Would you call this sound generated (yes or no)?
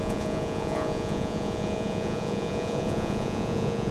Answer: yes